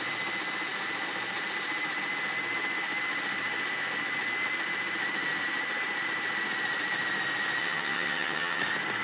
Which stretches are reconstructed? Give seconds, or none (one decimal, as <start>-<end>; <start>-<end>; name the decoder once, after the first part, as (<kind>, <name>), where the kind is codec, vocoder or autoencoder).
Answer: 7.6-8.6 (vocoder, HiFi-GAN)